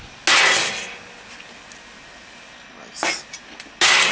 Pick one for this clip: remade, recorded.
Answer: recorded